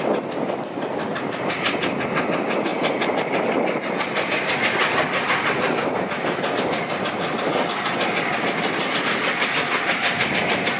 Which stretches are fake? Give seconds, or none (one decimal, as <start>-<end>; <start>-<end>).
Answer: none